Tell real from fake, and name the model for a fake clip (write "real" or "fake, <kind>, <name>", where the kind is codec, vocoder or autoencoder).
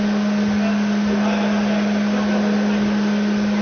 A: real